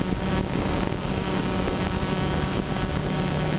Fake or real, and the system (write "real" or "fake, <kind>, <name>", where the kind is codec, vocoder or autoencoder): fake, codec, DAC